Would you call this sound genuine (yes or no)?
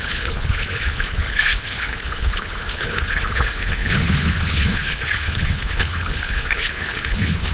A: no